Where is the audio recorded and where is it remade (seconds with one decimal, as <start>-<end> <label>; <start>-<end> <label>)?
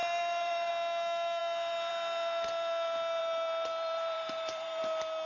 0.0-0.7 remade; 0.7-3.2 recorded; 3.2-4.8 remade; 4.8-5.3 recorded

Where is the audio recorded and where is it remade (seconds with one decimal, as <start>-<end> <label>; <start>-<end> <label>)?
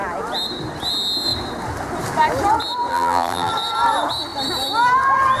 0.0-2.9 recorded; 2.9-3.5 remade; 3.5-5.4 recorded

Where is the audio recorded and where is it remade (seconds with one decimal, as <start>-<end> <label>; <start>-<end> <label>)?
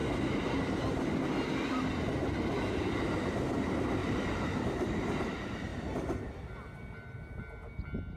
0.0-4.0 recorded; 4.0-5.2 remade; 5.2-8.2 recorded